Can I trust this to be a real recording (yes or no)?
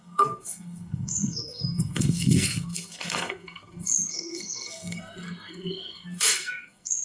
no